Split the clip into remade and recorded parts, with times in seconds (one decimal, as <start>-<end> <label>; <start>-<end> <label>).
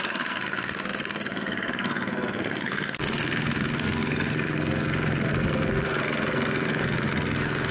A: 0.0-7.7 remade